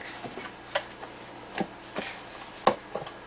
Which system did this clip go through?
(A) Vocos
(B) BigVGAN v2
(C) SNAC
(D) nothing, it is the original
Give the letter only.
D